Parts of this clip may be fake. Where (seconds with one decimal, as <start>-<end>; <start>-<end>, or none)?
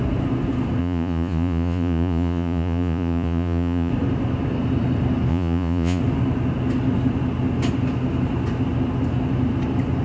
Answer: 0.8-3.9; 5.3-6.0